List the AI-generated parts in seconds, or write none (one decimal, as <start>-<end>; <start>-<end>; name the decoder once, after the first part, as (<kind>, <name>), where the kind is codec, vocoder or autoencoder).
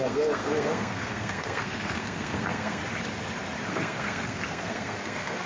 0.0-2.8 (codec, SNAC); 3.7-5.5